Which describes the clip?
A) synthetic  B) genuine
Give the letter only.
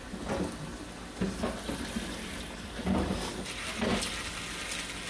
B